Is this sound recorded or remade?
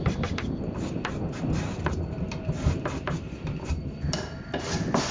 remade